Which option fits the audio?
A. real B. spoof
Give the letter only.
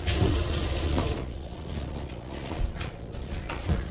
B